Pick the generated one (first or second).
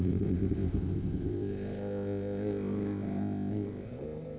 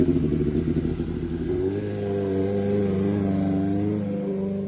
first